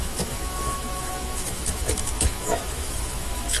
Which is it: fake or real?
fake